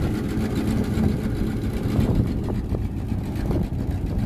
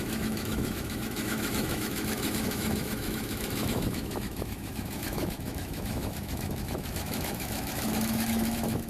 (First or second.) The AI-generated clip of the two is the second